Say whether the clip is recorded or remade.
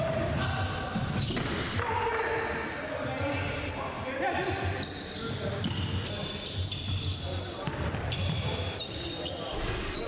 recorded